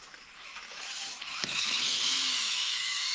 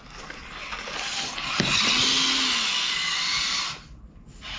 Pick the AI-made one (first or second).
first